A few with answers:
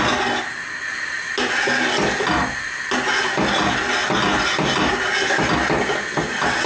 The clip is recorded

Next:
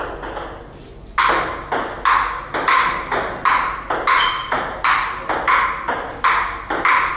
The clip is recorded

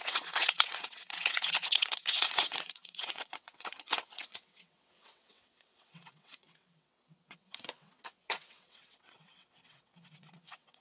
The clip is remade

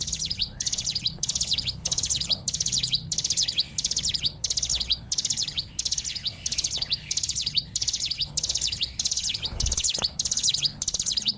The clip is remade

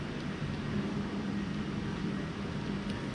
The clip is recorded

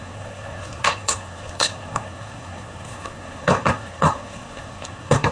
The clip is remade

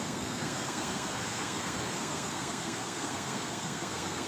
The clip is remade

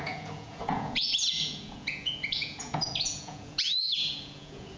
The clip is remade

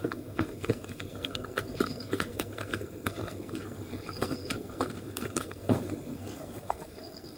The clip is remade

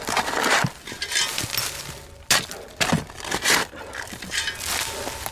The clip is recorded